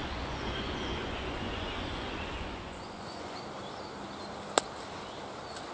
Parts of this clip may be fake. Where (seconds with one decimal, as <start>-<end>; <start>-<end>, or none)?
0.0-3.4